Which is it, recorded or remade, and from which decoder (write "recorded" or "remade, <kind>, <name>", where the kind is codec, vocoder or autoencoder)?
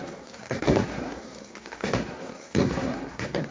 remade, codec, SNAC